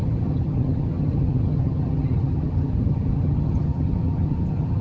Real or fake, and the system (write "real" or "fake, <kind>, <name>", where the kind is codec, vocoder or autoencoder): fake, vocoder, HiFi-GAN